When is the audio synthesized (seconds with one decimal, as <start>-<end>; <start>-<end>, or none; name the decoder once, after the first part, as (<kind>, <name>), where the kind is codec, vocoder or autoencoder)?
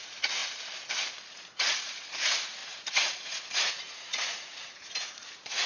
0.0-0.4 (vocoder, Vocos); 1.3-5.7